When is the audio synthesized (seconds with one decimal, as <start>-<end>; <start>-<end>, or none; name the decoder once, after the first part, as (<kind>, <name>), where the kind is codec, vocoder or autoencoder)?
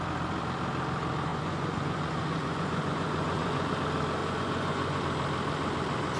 1.3-3.7 (vocoder, Vocos); 4.2-5.0